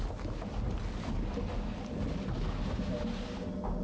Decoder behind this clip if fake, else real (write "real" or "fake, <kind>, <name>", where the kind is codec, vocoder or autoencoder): real